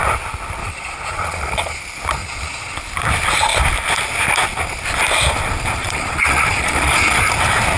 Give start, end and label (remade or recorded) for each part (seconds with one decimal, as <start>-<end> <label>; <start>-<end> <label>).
0.0-0.6 recorded; 0.6-1.8 remade; 1.8-2.2 recorded; 2.2-2.8 remade; 2.8-5.8 recorded; 5.8-7.2 remade; 7.2-7.8 recorded